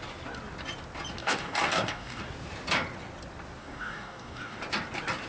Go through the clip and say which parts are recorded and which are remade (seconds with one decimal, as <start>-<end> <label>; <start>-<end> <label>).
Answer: 0.0-1.2 recorded; 1.2-2.2 remade; 2.2-3.6 recorded; 3.6-4.6 remade; 4.6-5.3 recorded